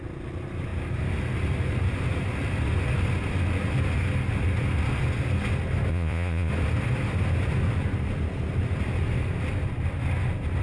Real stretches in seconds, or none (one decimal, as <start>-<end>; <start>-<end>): 0.0-5.9; 6.5-10.6